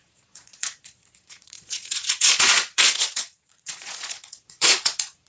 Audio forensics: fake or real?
fake